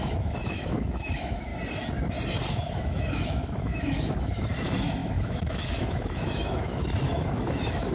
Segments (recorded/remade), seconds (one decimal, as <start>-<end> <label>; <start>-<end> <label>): 0.0-1.5 remade; 1.5-2.5 recorded; 2.5-7.9 remade